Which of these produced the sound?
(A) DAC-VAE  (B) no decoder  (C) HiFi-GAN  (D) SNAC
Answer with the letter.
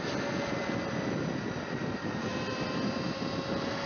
B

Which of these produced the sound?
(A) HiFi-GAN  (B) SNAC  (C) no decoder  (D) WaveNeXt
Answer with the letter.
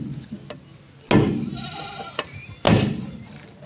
C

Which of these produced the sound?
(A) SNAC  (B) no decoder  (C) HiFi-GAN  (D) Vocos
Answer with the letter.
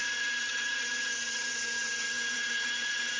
C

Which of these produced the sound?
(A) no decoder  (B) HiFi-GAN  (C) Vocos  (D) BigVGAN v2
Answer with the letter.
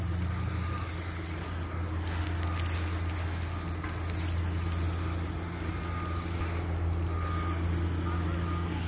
A